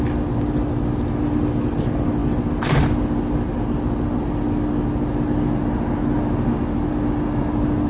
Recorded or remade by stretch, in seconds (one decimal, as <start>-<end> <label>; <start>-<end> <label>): 0.0-7.9 recorded